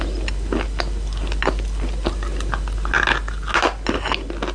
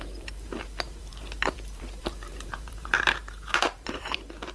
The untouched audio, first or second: first